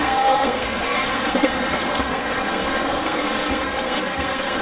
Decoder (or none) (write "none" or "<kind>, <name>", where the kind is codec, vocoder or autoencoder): codec, SNAC